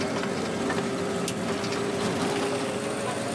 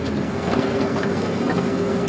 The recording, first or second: first